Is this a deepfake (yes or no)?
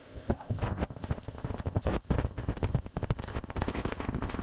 yes